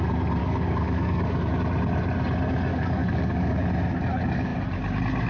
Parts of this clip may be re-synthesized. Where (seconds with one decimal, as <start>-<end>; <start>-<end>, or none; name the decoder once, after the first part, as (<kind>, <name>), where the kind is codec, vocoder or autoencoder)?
0.4-1.5 (codec, DAC); 2.7-3.7